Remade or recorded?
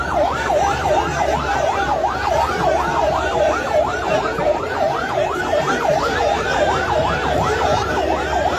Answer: remade